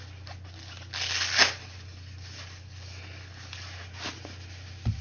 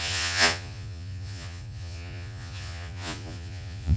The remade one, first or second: second